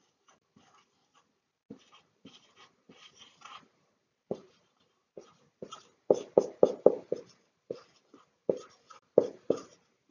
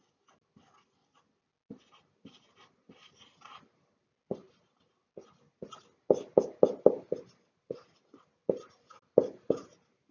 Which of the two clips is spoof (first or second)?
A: first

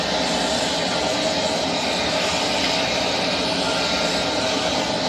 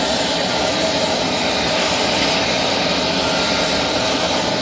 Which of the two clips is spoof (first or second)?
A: second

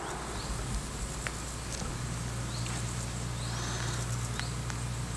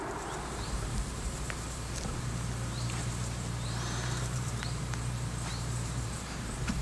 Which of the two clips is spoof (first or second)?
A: second